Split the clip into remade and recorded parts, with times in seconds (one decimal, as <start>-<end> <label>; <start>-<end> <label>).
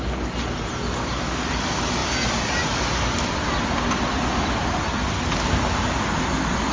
0.0-2.0 recorded; 2.0-4.7 remade; 4.7-6.7 recorded